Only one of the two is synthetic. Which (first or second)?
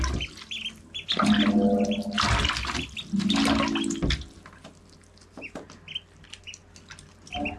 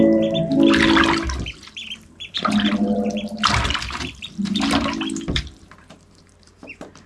second